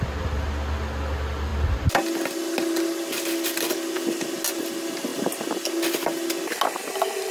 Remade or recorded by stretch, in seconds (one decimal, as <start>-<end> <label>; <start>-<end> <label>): 0.0-7.3 recorded